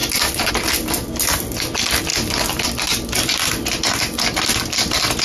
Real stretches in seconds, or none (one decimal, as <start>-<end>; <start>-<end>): 0.5-2.1